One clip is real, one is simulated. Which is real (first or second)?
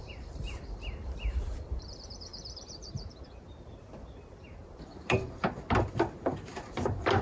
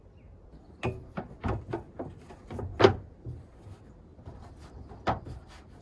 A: second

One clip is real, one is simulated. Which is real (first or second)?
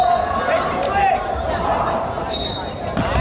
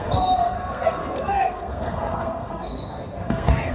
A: first